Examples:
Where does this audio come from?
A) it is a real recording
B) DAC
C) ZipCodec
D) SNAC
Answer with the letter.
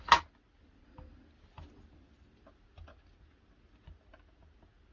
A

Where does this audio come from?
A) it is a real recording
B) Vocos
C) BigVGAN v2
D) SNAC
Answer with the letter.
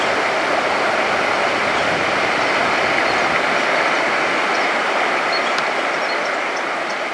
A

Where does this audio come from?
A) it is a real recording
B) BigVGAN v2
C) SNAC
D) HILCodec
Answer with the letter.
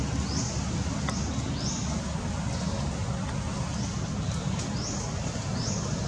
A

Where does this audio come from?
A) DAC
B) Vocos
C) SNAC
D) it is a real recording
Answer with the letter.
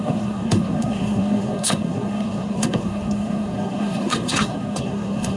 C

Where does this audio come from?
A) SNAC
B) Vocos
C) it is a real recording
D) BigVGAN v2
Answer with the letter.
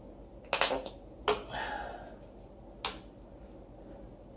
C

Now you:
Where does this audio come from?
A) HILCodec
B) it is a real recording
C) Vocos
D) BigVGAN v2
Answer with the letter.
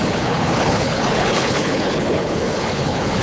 A